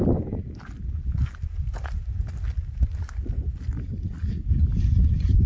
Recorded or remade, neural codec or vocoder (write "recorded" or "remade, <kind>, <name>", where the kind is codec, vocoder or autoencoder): recorded